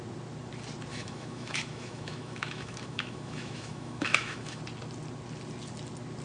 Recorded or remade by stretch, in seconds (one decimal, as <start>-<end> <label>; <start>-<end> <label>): 0.0-0.9 recorded; 0.9-4.6 remade; 4.6-6.2 recorded